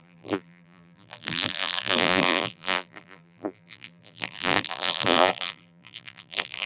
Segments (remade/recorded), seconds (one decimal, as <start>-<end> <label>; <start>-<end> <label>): 0.0-6.7 remade